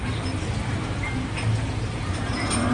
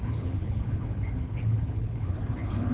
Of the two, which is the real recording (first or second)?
first